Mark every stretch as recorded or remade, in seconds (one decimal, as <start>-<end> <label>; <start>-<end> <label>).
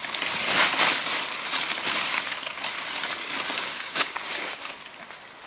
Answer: 0.0-3.6 recorded; 3.6-4.7 remade; 4.7-5.5 recorded